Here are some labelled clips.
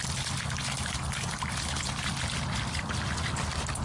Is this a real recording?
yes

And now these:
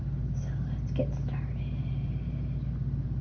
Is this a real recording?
yes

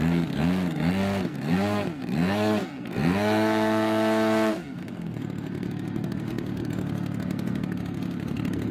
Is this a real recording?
no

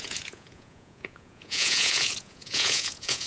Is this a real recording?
no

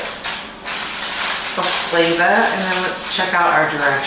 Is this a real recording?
no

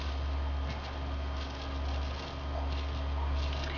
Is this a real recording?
yes